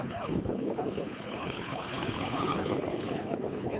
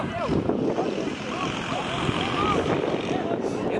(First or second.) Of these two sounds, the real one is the second